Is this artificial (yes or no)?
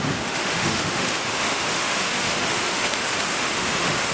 yes